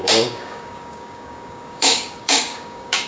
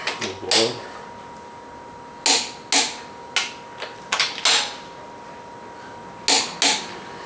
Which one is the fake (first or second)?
first